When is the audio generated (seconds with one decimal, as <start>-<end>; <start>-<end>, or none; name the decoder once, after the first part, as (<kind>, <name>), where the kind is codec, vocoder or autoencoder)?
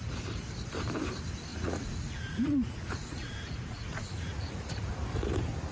1.5-4.9 (vocoder, Vocos)